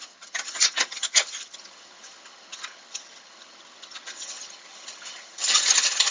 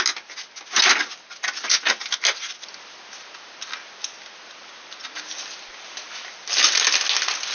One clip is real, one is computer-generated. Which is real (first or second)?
second